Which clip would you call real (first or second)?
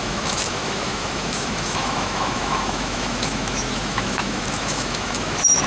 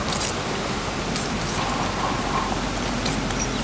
second